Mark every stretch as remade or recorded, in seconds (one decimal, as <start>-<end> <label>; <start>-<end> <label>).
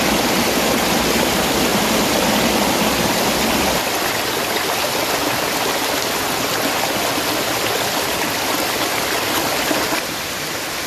0.0-10.9 recorded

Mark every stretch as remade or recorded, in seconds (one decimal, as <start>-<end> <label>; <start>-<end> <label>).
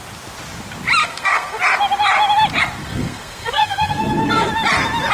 0.0-1.0 recorded; 1.0-1.6 remade; 1.6-2.8 recorded; 2.8-4.5 remade; 4.5-5.1 recorded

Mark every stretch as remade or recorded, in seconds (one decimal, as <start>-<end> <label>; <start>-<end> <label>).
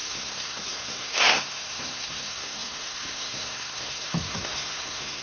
0.0-5.2 remade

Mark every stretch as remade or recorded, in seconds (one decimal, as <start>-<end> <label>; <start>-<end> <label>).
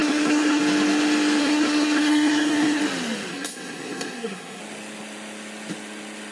0.0-0.6 remade; 0.6-1.4 recorded; 1.4-2.8 remade; 2.8-3.3 recorded; 3.3-4.6 remade; 4.6-6.3 recorded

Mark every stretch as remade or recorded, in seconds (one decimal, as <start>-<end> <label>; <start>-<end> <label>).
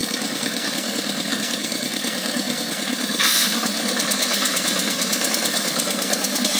0.0-6.6 remade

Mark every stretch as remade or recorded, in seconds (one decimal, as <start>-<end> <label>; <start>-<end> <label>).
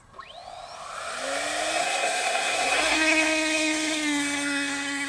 0.0-1.8 recorded; 1.8-5.1 remade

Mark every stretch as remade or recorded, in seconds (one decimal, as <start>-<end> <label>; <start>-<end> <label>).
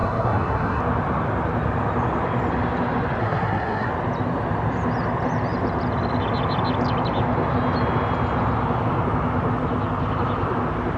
0.0-0.8 remade; 0.8-3.2 recorded; 3.2-3.9 remade; 3.9-11.0 recorded